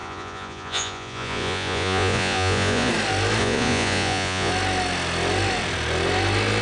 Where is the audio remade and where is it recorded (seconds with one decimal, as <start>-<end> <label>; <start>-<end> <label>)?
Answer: 0.0-2.9 remade; 2.9-3.4 recorded; 3.4-4.5 remade; 4.5-6.6 recorded